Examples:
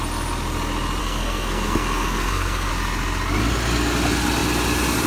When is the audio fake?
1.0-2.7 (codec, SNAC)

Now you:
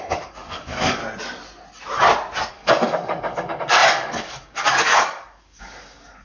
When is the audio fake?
0.0-1.0 (codec, DAC); 2.5-6.2

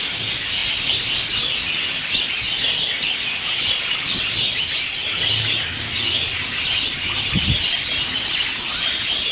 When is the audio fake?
none